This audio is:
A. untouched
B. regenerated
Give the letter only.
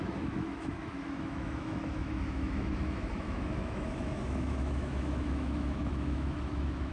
B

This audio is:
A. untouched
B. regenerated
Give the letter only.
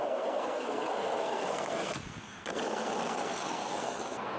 B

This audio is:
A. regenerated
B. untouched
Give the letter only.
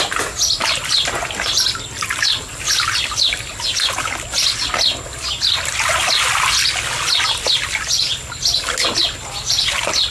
B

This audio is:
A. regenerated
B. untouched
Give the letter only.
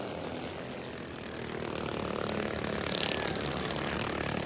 B